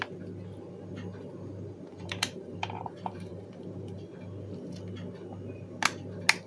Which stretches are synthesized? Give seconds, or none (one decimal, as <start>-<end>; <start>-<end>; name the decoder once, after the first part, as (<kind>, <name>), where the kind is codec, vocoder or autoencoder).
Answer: 1.9-4.0 (vocoder, BigVGAN v2)